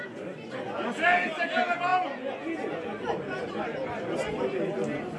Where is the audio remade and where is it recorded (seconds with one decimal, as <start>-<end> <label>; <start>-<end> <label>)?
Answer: 0.0-5.2 recorded